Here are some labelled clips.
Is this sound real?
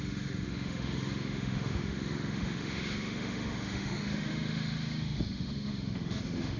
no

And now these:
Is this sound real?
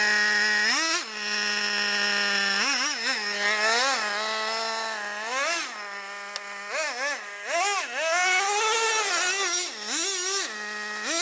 yes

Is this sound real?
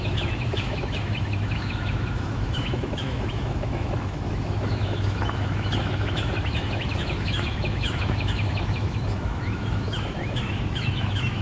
no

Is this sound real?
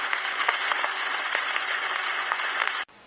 no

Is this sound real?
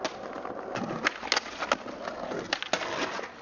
yes